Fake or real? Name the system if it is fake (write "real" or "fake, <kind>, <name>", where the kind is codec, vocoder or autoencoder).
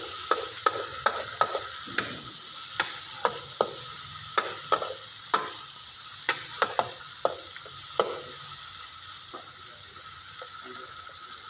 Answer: real